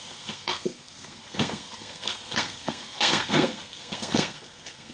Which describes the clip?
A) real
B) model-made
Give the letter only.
B